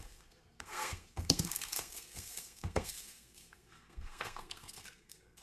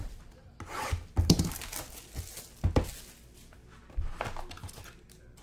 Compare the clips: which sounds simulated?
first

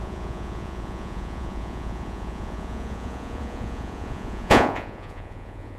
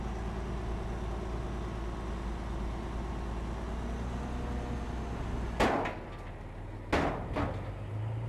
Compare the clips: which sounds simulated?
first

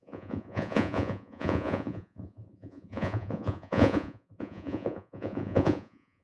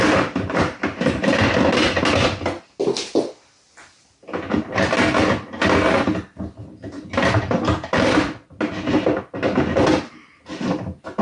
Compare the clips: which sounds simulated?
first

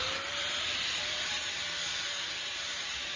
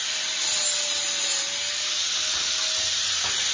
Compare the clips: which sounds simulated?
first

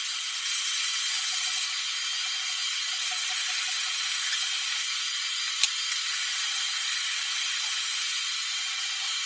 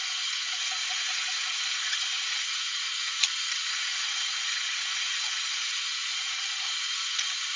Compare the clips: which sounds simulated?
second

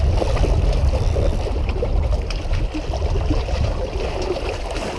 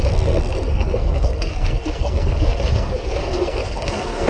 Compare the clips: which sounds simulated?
second